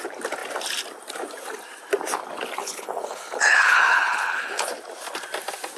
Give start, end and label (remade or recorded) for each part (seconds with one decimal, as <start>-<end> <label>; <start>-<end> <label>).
0.0-2.6 recorded; 2.6-4.7 remade; 4.7-5.8 recorded